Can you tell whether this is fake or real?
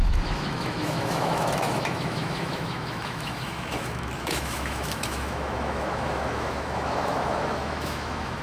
fake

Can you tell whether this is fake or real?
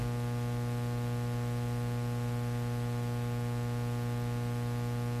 real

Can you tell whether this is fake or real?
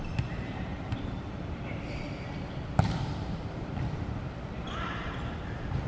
fake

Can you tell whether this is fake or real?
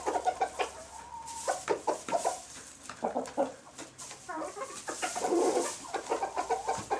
fake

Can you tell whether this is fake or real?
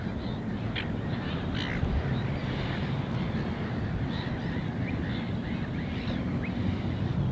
real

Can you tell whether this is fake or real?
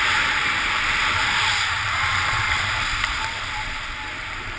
real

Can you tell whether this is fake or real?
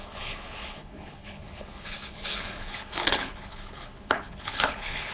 fake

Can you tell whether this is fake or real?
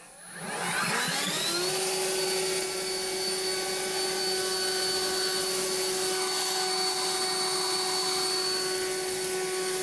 real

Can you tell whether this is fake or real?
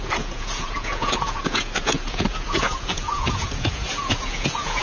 fake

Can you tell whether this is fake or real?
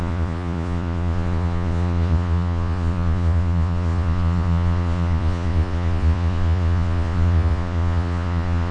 fake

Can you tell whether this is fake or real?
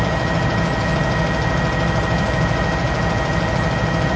real